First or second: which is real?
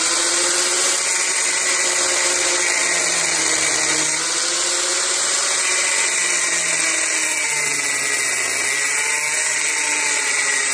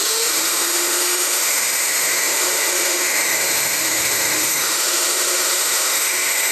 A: first